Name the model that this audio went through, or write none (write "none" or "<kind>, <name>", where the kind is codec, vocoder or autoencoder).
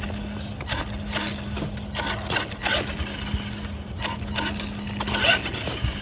none